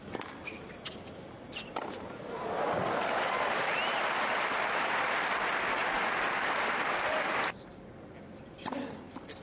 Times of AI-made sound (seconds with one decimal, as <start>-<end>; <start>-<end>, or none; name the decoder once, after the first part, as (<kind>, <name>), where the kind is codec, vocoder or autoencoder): none